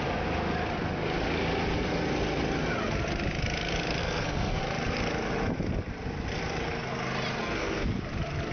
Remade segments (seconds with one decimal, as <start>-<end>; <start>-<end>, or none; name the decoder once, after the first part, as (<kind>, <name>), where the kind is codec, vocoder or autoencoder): 4.0-4.6 (codec, SNAC); 7.4-8.0